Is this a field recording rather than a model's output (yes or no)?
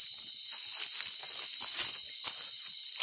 yes